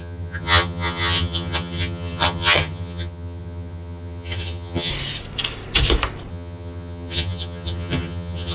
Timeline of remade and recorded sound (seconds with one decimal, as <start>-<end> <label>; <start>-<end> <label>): 0.0-4.9 remade; 4.9-6.3 recorded; 6.3-8.5 remade